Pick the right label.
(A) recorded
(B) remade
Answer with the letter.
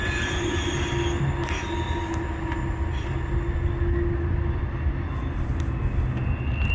A